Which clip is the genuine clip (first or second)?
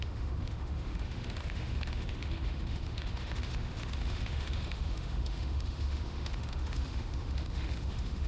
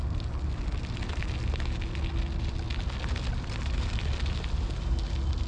second